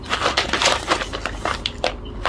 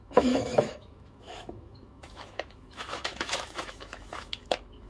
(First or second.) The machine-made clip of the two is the second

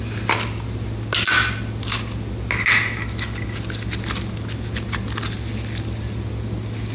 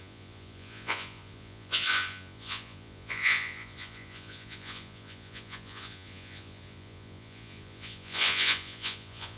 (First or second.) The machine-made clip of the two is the second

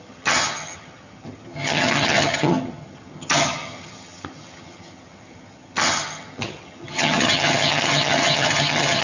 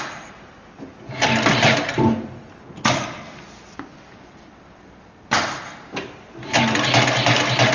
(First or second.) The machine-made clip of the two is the first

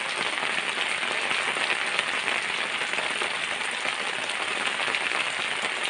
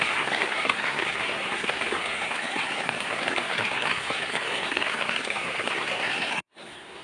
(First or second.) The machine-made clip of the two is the second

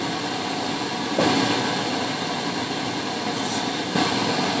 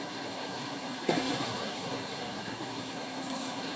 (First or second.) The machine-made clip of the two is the second